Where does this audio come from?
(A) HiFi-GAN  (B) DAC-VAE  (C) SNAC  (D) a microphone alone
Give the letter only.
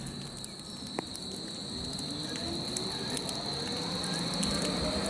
D